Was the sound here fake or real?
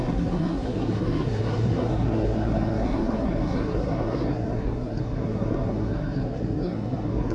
fake